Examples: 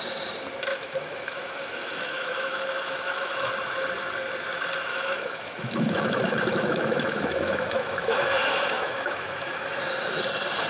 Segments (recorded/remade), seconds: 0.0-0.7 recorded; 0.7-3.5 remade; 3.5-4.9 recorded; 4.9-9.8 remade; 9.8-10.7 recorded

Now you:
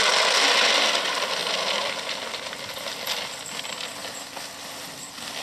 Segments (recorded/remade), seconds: 0.0-5.4 recorded

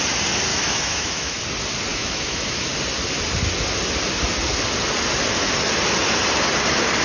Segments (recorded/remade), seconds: 0.0-0.5 recorded; 0.5-1.4 remade; 1.4-1.9 recorded; 1.9-2.7 remade; 2.7-7.0 recorded

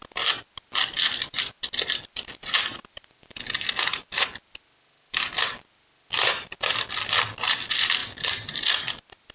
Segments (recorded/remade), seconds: 0.0-9.3 recorded